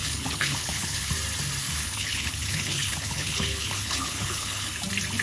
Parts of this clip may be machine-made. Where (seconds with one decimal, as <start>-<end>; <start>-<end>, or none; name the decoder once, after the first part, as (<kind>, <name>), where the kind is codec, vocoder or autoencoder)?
0.0-1.1 (codec, HILCodec); 1.6-4.7